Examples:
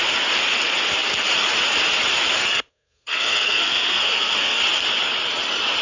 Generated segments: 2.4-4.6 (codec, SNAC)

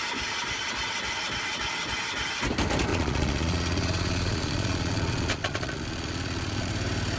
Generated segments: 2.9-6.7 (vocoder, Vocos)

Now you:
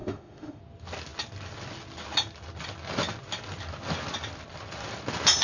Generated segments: 0.0-0.6 (autoencoder, DAC-VAE)

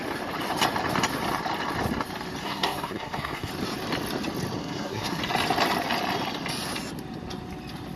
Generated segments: 2.4-3.5 (codec, SNAC); 4.6-5.2

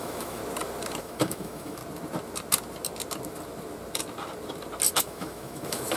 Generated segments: 0.0-0.4 (autoencoder, DAC-VAE); 1.0-1.8; 5.0-6.0

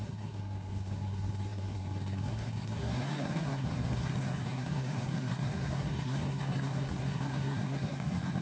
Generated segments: 0.0-8.4 (codec, SNAC)